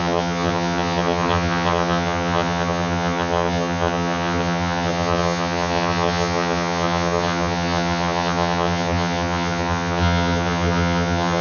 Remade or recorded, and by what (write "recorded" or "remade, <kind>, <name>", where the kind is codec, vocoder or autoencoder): remade, vocoder, HiFi-GAN